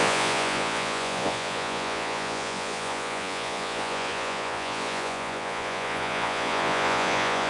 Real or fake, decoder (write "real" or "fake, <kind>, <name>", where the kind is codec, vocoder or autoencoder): fake, vocoder, Vocos